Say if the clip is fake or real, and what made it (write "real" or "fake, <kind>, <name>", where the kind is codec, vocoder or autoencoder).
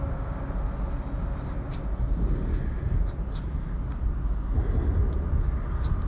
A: real